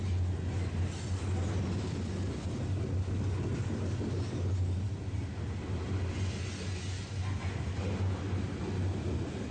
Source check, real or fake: real